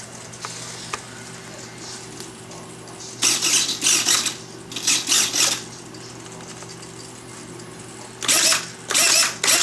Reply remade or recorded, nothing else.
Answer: recorded